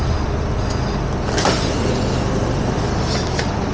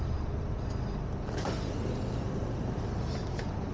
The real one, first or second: first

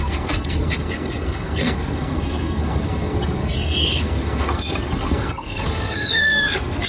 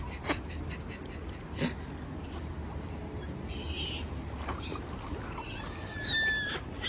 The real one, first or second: second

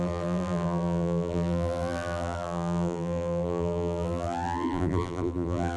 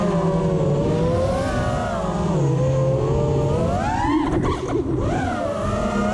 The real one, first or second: second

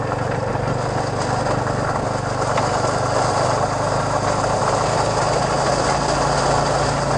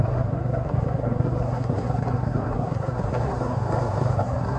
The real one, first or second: first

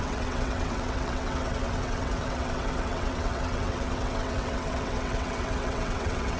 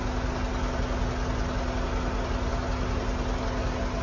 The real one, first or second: second